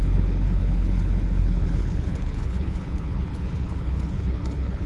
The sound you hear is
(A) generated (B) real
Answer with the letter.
A